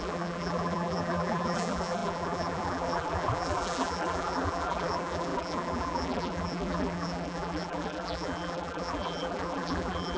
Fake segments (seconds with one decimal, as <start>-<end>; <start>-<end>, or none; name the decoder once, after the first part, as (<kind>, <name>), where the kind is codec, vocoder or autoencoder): 0.0-10.2 (vocoder, BigVGAN v2)